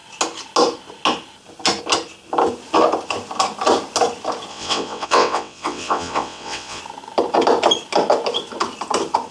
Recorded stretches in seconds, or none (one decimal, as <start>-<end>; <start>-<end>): 0.0-4.5; 6.8-9.3